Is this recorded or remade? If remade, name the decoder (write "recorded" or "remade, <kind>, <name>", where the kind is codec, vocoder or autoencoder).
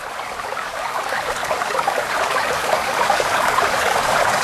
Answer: remade, codec, DAC